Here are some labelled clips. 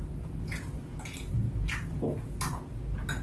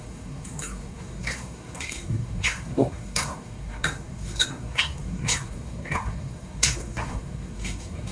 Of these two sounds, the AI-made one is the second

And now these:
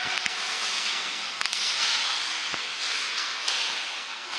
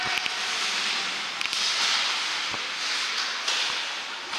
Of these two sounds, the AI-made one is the first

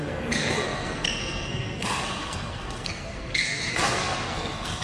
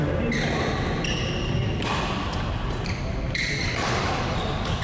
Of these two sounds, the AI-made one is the first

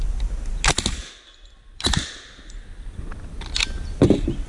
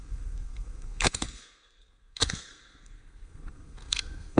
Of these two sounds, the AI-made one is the second